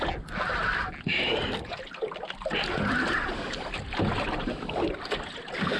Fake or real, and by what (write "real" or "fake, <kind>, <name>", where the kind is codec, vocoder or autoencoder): real